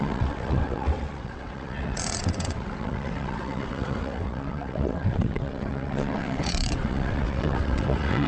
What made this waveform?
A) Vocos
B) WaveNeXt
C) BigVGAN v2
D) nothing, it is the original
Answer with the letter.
B